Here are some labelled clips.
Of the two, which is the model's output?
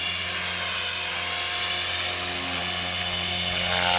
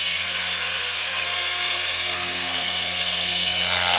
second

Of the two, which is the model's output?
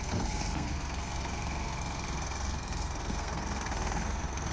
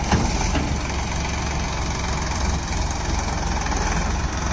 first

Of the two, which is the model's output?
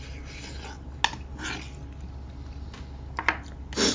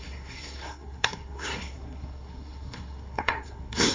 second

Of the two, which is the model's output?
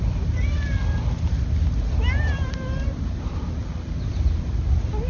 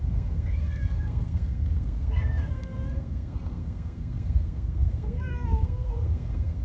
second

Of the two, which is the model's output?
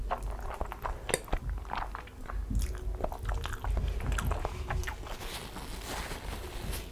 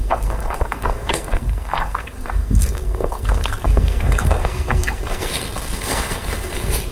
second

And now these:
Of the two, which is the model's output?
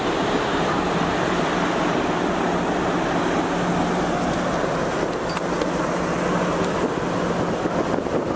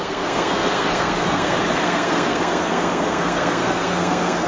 second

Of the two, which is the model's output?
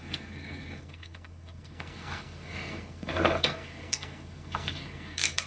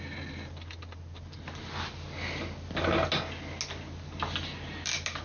first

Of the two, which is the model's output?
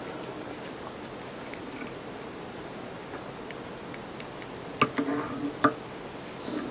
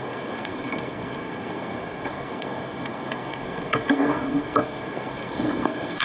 second